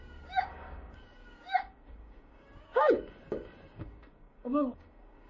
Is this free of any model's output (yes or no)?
no